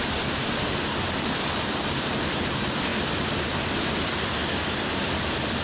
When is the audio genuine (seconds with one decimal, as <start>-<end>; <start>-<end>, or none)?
0.0-5.6